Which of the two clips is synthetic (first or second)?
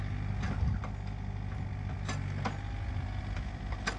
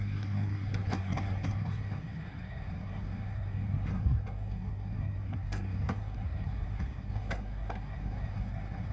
second